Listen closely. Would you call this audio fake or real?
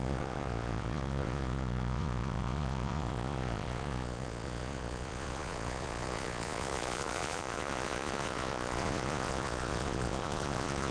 fake